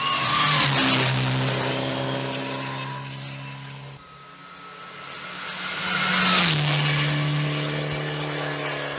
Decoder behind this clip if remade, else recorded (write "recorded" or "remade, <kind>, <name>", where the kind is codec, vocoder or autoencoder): recorded